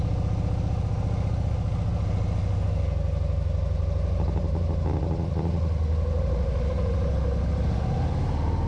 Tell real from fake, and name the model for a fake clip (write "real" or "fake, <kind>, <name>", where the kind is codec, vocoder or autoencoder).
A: real